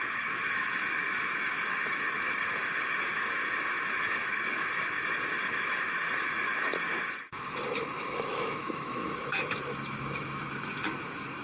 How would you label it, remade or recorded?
remade